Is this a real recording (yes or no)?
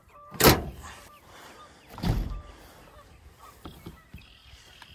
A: no